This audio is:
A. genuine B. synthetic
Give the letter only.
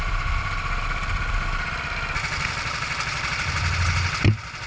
A